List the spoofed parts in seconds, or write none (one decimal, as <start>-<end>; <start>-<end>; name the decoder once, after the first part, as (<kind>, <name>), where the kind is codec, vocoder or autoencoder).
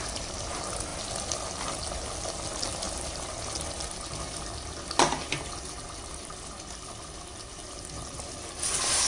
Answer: none